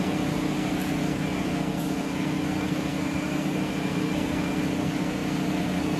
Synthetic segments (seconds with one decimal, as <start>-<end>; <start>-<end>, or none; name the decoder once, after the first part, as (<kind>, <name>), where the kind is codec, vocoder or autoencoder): 0.0-6.0 (codec, SNAC)